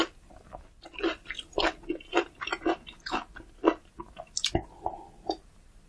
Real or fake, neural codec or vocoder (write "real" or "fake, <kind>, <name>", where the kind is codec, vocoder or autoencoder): real